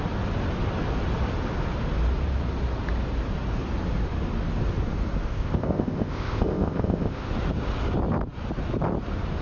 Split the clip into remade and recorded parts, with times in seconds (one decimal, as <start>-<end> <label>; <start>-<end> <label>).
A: 0.0-5.3 recorded; 5.3-7.3 remade; 7.3-9.4 recorded